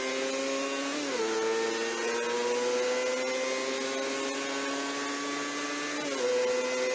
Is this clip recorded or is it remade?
recorded